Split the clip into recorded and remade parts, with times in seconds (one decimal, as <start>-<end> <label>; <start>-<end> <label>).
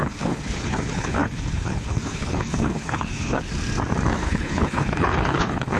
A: 0.0-3.5 remade; 3.5-4.2 recorded; 4.2-5.8 remade